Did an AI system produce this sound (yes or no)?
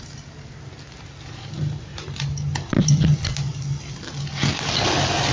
no